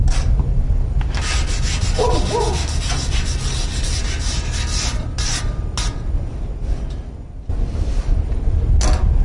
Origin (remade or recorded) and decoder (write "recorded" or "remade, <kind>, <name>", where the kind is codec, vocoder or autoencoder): recorded